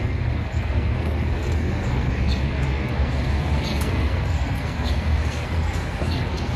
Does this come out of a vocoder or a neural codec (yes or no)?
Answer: yes